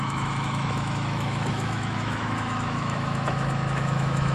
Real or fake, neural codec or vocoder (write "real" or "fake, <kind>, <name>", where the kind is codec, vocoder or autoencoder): fake, autoencoder, DAC-VAE